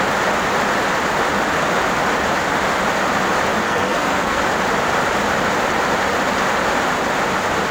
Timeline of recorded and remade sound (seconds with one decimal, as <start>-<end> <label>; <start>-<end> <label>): 0.0-3.6 recorded; 3.6-4.4 remade; 4.4-7.7 recorded